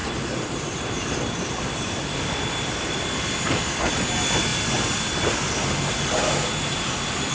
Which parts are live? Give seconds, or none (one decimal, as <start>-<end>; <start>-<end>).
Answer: 0.0-7.3